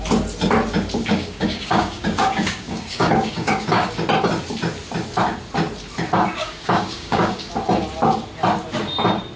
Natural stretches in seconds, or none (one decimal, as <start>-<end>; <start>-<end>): 0.0-1.0; 3.9-6.4; 7.5-9.4